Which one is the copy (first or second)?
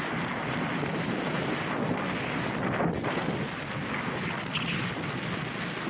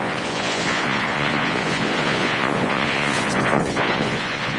second